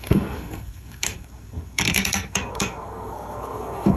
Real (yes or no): no